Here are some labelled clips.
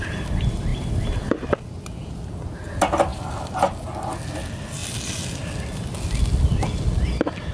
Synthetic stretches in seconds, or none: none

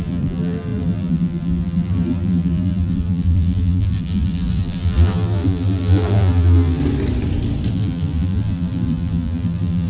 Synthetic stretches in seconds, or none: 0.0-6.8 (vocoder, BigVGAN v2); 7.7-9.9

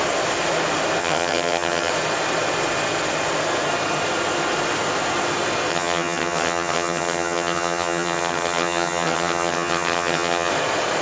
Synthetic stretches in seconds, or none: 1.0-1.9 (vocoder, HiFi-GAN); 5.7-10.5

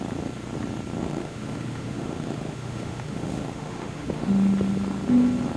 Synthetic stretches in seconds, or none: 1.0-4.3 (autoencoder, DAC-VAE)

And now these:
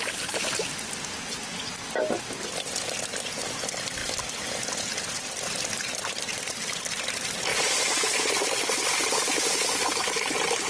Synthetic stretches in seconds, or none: 7.5-8.3 (vocoder, Vocos)

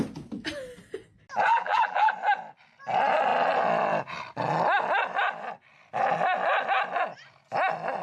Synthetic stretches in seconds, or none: 1.5-2.1 (vocoder, BigVGAN v2)

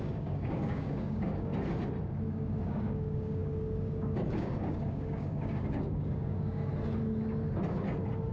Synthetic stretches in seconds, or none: 0.0-1.5 (codec, DAC); 2.2-6.7

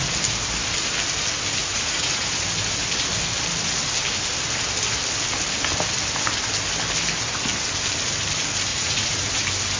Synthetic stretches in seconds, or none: 1.6-2.3 (vocoder, Vocos); 8.7-9.4